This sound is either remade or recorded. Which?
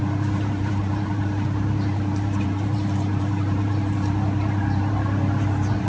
remade